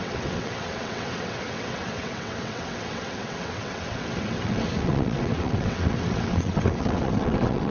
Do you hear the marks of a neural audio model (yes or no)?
yes